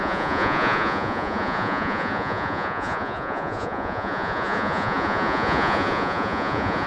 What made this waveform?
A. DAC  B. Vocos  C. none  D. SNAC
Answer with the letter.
B